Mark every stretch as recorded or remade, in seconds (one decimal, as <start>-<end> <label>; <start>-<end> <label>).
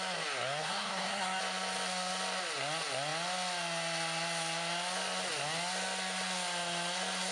0.0-0.6 recorded; 0.6-1.4 remade; 1.4-7.3 recorded